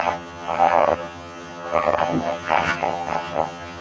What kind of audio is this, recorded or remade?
remade